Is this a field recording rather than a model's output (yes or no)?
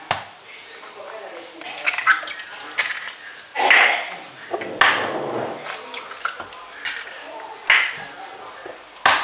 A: yes